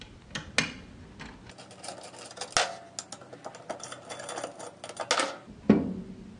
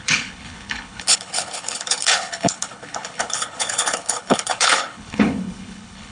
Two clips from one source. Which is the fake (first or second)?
second